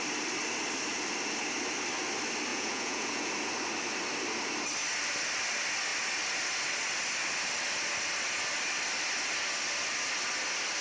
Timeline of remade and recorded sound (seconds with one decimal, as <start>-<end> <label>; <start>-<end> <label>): 0.0-2.5 recorded; 2.5-3.3 remade; 3.3-10.8 recorded